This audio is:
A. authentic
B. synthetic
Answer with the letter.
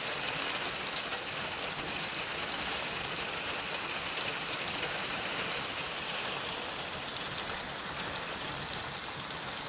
A